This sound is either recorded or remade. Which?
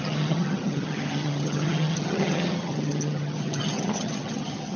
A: remade